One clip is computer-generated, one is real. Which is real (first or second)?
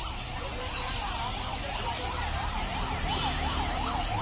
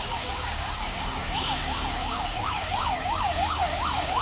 first